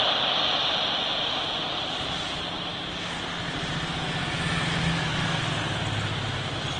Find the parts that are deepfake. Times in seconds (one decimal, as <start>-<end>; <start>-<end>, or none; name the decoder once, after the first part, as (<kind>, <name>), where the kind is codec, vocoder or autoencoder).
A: none